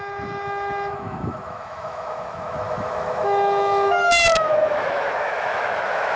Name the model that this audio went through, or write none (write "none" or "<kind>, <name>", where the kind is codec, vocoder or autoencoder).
autoencoder, DAC-VAE